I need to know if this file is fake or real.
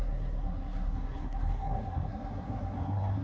fake